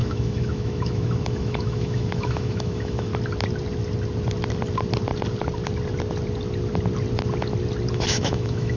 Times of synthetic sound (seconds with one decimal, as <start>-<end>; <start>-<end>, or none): 0.0-3.1; 7.9-8.8